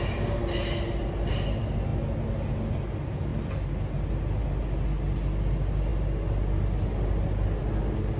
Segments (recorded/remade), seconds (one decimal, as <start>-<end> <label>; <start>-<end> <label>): 0.0-8.2 recorded